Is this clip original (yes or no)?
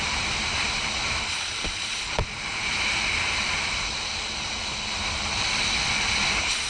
yes